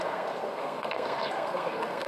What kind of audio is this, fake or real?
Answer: fake